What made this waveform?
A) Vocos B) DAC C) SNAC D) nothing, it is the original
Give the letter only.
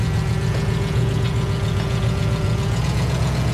A